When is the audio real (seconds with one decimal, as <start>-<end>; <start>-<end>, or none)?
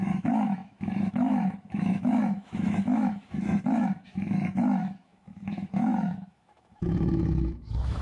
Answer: none